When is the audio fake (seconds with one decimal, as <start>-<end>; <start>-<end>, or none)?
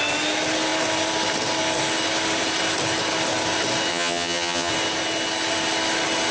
3.9-4.7